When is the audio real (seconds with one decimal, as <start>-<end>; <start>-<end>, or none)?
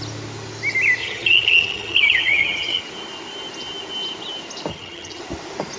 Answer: 0.0-1.0; 2.8-4.7; 5.2-5.8